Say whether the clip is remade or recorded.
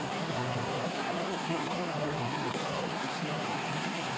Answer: remade